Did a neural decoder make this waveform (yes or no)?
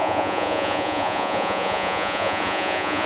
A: yes